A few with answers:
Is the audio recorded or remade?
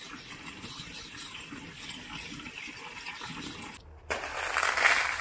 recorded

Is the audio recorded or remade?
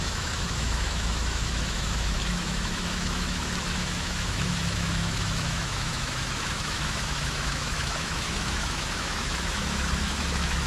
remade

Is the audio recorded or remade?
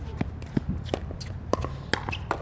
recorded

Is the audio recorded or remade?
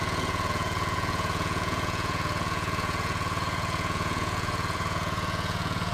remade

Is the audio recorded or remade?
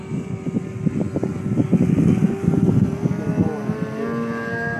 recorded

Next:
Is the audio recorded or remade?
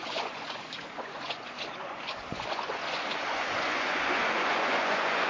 remade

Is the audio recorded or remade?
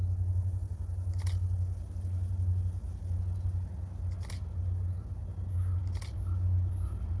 recorded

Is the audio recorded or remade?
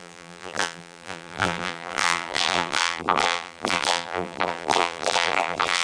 remade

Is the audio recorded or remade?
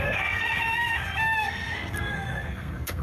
remade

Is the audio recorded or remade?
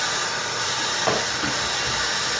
recorded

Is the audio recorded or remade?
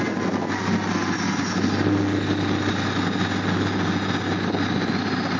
recorded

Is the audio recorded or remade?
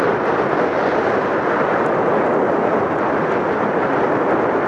recorded